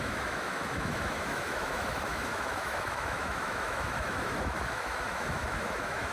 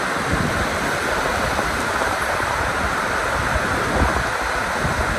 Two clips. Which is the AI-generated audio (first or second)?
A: first